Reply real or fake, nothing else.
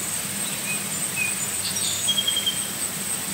real